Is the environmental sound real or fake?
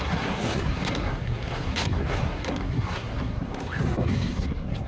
fake